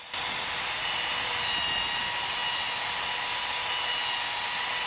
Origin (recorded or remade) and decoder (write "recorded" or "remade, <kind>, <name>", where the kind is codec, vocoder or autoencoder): recorded